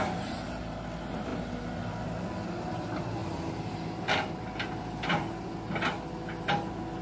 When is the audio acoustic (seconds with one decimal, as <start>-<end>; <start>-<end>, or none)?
0.0-7.0